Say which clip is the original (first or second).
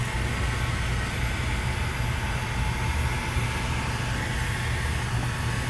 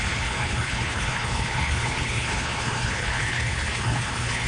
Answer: first